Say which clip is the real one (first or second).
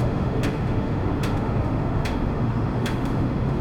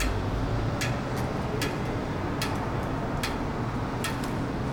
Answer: second